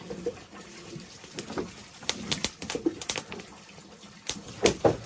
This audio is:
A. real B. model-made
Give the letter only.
A